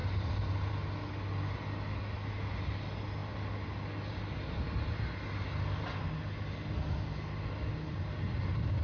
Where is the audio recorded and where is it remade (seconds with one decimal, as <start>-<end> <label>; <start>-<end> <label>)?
0.0-8.8 recorded

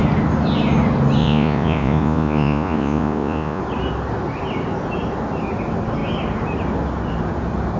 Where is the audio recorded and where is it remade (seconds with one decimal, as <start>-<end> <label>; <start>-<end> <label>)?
0.0-1.2 recorded; 1.2-3.6 remade; 3.6-7.8 recorded

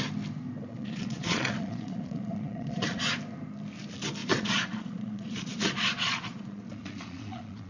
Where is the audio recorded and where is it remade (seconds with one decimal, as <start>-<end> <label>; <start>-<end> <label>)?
0.0-0.7 recorded; 0.7-3.0 remade; 3.0-4.2 recorded; 4.2-7.7 remade

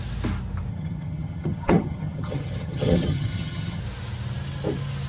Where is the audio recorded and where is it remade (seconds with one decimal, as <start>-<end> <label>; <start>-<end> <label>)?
0.0-0.7 recorded; 0.7-3.8 remade; 3.8-5.1 recorded

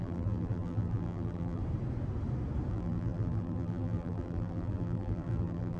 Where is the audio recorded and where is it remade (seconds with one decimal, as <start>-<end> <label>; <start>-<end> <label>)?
0.0-1.6 remade; 1.6-2.7 recorded; 2.7-5.8 remade

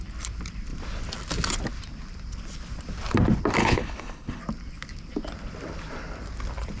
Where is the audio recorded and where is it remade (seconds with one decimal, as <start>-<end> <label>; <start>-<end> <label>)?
0.0-3.6 recorded; 3.6-4.4 remade; 4.4-6.8 recorded

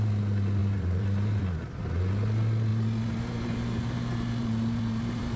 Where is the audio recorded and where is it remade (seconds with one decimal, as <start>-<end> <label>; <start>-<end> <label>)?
0.0-0.6 recorded; 0.6-1.4 remade; 1.4-2.7 recorded; 2.7-5.4 remade